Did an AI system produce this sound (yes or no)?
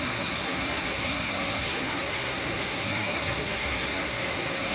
yes